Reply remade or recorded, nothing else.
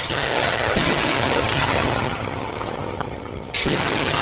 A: remade